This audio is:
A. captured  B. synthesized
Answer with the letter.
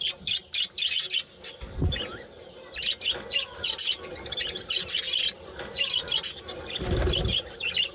A